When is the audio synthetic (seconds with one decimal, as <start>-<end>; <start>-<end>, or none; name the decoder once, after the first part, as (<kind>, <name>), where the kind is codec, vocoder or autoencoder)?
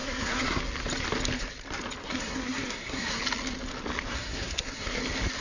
0.0-0.6 (codec, SNAC); 2.0-3.2; 4.1-5.0